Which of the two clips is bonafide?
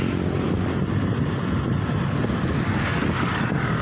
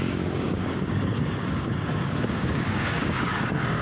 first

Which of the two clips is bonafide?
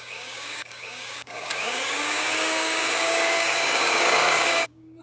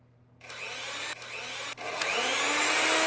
second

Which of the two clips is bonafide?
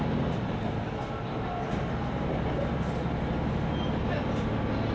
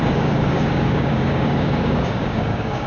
first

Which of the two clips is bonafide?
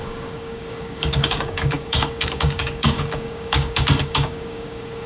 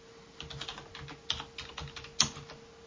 second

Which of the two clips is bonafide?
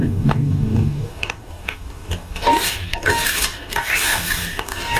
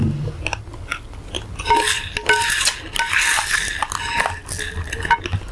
second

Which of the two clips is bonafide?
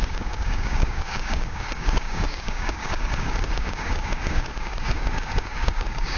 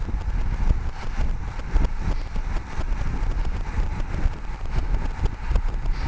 second